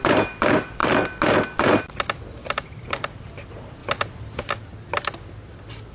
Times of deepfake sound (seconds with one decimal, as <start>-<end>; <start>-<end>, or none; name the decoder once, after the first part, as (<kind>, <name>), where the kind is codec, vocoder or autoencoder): 2.4-3.2 (vocoder, BigVGAN v2)